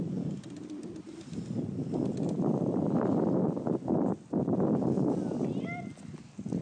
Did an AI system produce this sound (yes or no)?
no